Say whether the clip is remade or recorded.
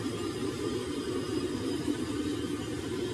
recorded